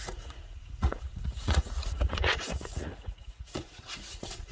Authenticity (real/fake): fake